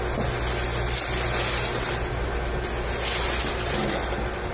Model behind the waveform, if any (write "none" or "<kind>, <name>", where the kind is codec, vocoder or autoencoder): none